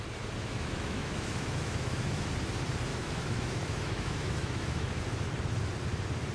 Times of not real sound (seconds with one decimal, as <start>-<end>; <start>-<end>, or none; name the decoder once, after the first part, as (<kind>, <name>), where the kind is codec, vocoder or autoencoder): 0.4-2.3 (autoencoder, DAC-VAE); 2.9-5.0